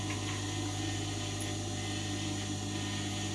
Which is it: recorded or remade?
recorded